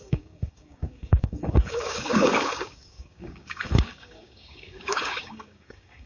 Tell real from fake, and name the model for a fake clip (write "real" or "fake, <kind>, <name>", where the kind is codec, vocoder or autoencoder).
fake, codec, DAC